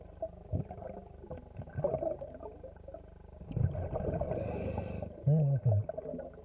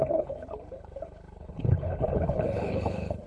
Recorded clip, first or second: first